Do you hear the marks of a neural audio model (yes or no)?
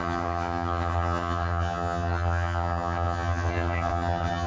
yes